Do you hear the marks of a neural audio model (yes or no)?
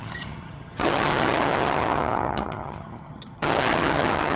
yes